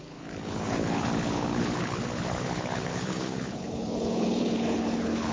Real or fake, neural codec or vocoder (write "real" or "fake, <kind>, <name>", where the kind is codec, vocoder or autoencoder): fake, codec, HILCodec